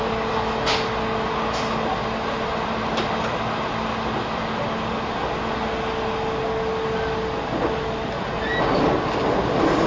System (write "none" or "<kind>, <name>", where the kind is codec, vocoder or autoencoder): none